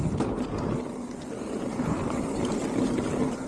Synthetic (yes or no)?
no